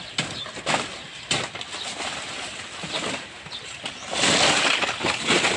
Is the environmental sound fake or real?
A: real